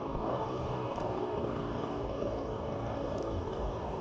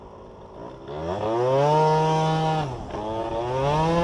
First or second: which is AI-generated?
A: first